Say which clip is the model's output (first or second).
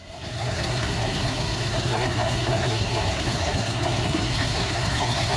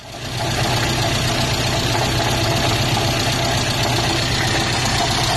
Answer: first